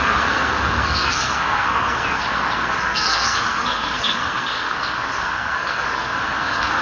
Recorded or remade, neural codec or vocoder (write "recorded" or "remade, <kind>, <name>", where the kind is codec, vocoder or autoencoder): remade, codec, SNAC